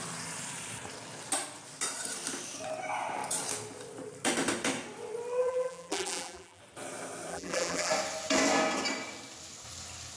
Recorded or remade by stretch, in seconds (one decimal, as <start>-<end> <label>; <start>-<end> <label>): 0.0-5.4 recorded; 5.4-6.6 remade; 6.6-7.3 recorded; 7.3-7.9 remade; 7.9-10.2 recorded